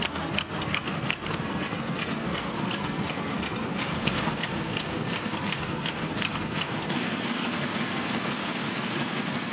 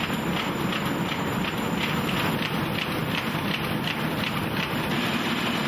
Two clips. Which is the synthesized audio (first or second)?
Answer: first